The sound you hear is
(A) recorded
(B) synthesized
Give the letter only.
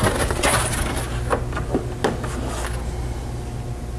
A